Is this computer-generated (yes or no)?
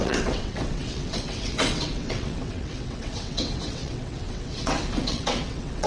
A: yes